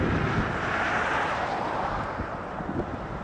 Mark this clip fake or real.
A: real